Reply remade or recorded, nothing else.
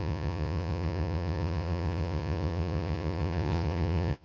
remade